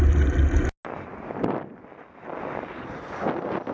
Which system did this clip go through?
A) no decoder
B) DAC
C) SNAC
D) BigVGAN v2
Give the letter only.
A